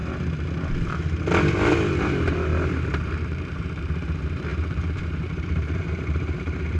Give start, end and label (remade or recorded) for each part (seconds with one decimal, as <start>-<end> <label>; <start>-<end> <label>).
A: 0.0-2.0 recorded; 2.0-6.8 remade